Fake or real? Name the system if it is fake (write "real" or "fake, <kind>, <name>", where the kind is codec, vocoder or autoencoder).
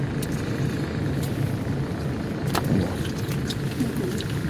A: real